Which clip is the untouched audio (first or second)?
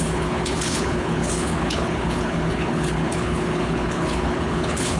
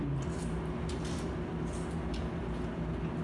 second